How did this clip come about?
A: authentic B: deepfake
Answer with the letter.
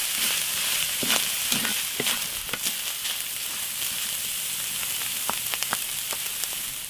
A